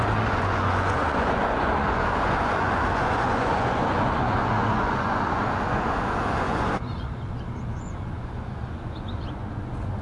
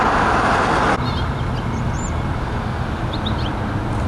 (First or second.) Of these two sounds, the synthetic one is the first